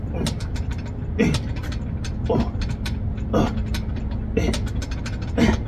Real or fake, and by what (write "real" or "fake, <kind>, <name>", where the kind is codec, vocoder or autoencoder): real